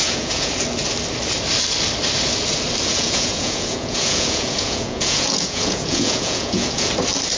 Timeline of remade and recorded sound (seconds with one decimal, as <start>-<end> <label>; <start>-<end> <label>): 0.0-0.5 remade; 0.5-2.9 recorded; 2.9-6.9 remade; 6.9-7.4 recorded